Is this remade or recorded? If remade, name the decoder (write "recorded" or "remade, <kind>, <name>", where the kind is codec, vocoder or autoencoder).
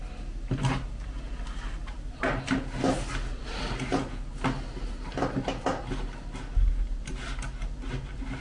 recorded